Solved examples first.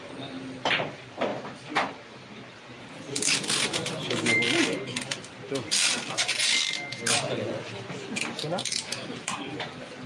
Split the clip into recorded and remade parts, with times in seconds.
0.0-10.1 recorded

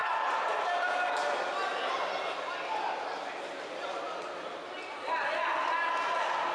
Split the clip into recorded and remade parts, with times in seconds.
0.0-6.5 recorded

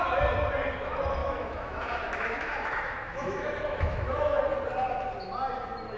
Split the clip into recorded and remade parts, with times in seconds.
0.0-1.2 recorded; 1.2-4.4 remade; 4.4-6.0 recorded